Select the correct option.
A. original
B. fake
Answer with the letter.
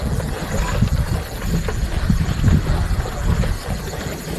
A